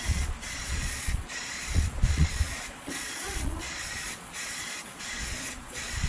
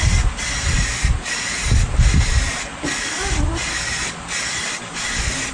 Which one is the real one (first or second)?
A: second